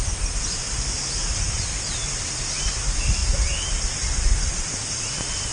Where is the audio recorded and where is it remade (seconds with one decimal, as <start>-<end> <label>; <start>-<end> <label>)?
0.0-5.5 recorded